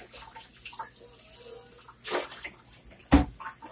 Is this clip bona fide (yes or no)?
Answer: yes